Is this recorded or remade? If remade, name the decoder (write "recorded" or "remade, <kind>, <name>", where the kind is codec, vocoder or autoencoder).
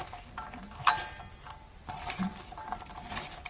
recorded